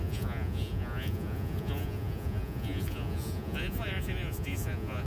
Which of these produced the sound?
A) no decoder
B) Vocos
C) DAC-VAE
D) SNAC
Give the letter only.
B